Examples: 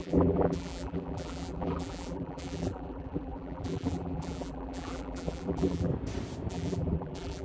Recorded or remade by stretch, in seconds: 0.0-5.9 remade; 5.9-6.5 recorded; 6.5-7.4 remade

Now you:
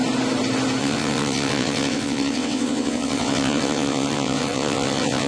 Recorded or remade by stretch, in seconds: 0.0-0.8 recorded; 0.8-5.3 remade

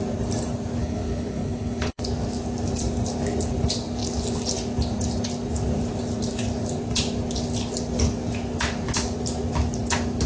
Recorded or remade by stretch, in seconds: 0.0-0.8 recorded; 0.8-2.0 remade; 2.0-10.3 recorded